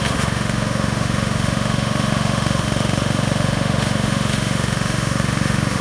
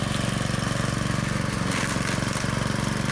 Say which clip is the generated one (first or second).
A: first